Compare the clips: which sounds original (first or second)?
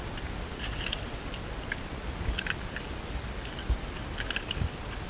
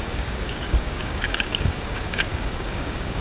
first